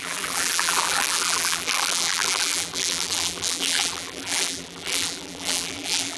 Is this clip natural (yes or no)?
no